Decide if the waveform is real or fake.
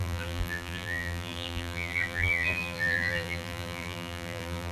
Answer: fake